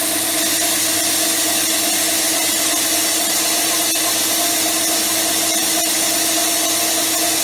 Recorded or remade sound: recorded